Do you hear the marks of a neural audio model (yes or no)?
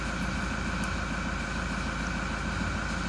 no